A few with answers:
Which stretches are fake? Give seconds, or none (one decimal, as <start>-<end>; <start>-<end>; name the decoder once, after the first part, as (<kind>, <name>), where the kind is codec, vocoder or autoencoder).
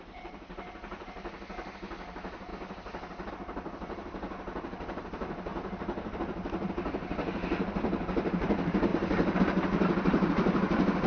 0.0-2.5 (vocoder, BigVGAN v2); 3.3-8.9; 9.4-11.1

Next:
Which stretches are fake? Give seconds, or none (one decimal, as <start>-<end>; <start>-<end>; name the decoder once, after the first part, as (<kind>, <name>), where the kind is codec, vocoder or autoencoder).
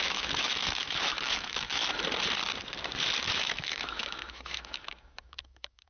0.0-1.8 (autoencoder, DAC-VAE); 3.2-5.9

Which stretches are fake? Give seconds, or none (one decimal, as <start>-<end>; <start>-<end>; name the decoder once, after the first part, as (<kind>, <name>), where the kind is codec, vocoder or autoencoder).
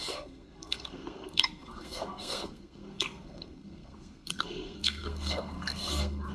0.0-6.3 (codec, SNAC)